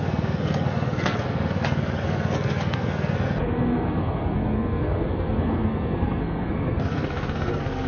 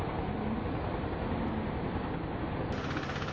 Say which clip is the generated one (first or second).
first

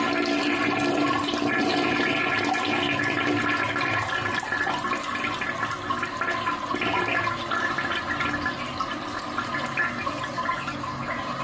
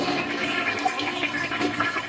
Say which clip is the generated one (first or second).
second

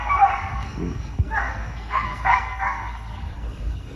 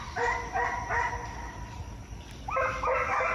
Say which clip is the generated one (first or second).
first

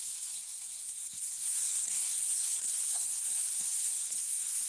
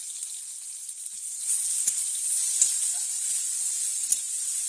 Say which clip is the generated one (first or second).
first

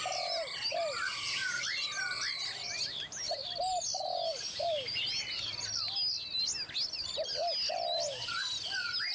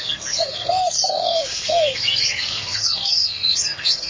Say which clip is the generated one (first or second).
second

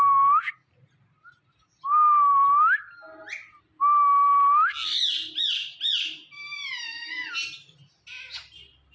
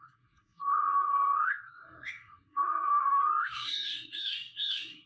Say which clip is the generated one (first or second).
second